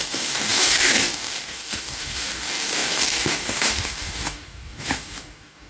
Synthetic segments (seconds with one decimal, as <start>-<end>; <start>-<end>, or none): 0.0-5.7